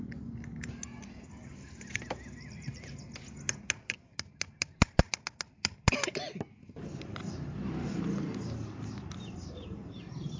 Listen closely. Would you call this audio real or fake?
real